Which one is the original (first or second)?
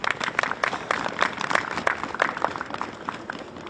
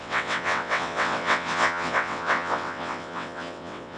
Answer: first